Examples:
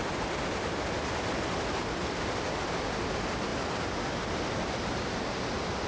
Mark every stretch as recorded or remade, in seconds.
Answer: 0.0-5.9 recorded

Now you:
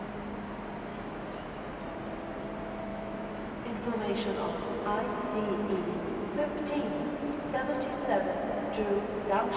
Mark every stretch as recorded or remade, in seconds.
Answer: 0.0-0.9 recorded; 0.9-1.6 remade; 1.6-2.9 recorded; 2.9-3.5 remade; 3.5-5.3 recorded; 5.3-6.3 remade; 6.3-9.6 recorded

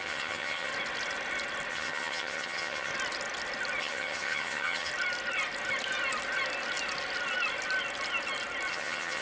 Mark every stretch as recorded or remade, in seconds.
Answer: 0.0-0.7 remade; 0.7-1.7 recorded; 1.7-2.9 remade; 2.9-3.8 recorded; 3.8-4.9 remade; 4.9-8.7 recorded; 8.7-9.2 remade

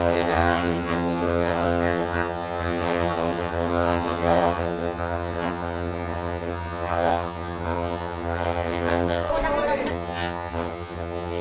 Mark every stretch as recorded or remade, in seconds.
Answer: 0.0-9.3 remade; 9.3-9.9 recorded; 9.9-11.4 remade